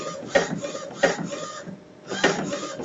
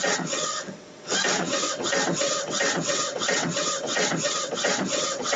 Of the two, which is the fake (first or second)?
second